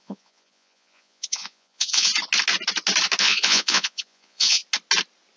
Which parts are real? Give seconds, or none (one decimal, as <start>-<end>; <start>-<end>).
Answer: 2.1-3.2; 4.6-5.4